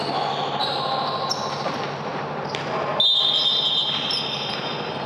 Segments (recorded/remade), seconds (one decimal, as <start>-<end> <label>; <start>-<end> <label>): 0.0-0.6 recorded; 0.6-1.5 remade; 1.5-5.1 recorded